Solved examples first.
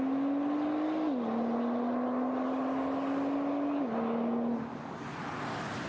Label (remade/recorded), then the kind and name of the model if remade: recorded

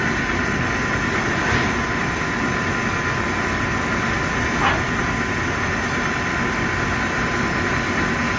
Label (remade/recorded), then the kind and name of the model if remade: recorded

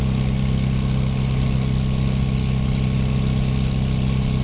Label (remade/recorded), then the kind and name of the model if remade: recorded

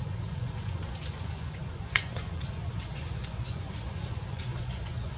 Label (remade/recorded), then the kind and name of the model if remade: remade, vocoder, Vocos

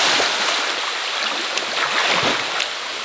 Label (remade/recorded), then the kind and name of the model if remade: recorded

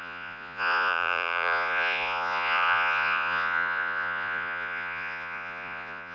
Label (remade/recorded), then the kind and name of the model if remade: remade, vocoder, Vocos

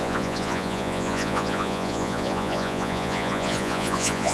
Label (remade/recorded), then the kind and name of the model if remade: remade, vocoder, Vocos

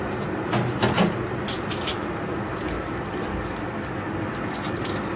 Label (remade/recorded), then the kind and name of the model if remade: recorded